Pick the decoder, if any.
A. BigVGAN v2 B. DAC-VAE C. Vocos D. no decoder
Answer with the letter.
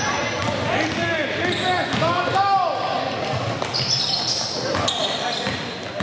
D